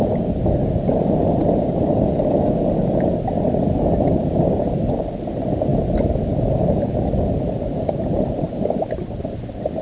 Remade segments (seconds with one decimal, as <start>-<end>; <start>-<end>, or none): 0.0-1.4; 4.6-5.7; 6.2-9.8

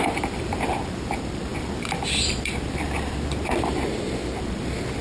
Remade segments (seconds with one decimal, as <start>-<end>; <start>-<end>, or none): none

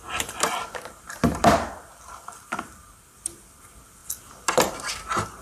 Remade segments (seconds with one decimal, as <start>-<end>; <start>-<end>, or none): 0.0-5.4

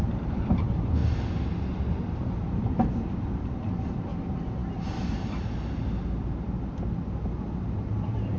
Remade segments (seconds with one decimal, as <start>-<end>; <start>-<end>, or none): 0.0-1.0; 1.7-8.4

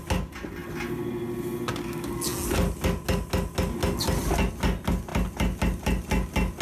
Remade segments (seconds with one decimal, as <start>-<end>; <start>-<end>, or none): none

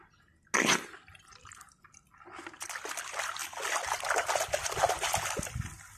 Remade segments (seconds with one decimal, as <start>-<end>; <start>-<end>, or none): none

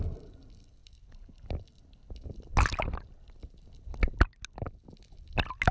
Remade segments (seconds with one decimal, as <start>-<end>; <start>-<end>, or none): none

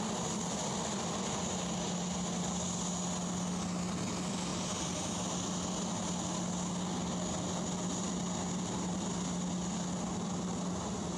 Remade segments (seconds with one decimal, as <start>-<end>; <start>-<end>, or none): none